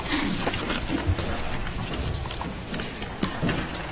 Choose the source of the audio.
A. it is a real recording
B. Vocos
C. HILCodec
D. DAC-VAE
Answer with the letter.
A